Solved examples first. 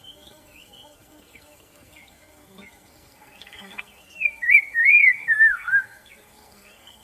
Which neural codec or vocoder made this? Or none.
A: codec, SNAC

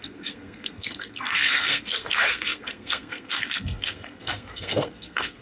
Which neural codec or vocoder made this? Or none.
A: codec, SNAC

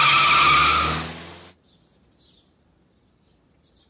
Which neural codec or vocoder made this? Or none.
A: none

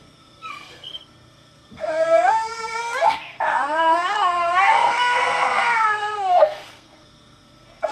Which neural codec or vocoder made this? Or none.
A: codec, SNAC